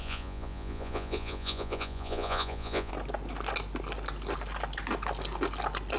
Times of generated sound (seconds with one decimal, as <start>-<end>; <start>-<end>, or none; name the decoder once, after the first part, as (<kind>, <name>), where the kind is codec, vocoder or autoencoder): 0.0-2.9 (vocoder, Vocos)